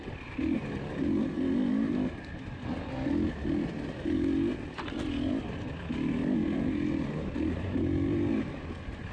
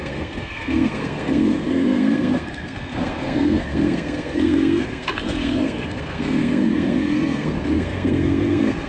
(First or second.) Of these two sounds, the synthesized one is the second